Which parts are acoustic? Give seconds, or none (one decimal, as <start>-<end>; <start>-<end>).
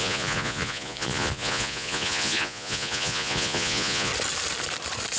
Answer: 4.1-5.2